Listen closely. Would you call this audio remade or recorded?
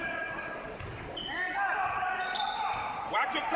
recorded